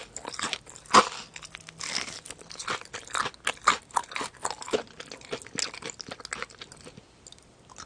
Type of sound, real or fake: real